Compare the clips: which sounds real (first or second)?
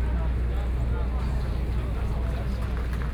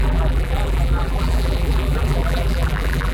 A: first